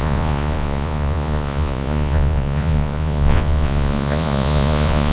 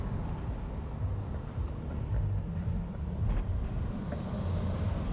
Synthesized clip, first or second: first